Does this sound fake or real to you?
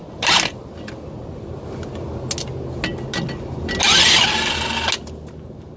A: real